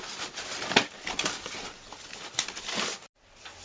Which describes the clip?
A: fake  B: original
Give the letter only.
B